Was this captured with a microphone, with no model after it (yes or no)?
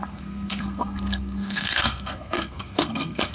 no